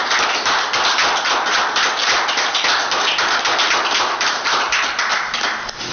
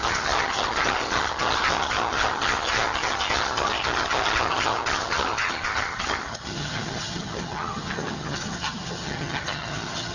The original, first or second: first